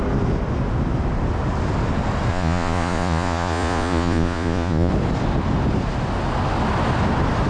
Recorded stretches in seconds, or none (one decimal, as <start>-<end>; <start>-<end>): 0.0-2.3; 4.9-7.5